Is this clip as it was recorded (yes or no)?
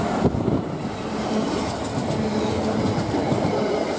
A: yes